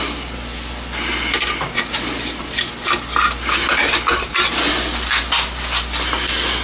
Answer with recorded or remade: recorded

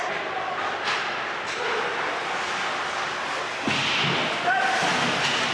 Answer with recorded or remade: recorded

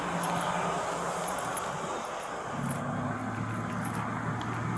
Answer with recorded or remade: recorded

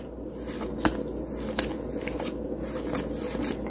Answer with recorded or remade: recorded